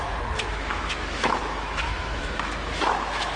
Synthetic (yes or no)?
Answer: yes